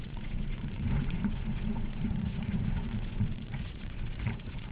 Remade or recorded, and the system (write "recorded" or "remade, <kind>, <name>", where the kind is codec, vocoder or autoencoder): remade, vocoder, Vocos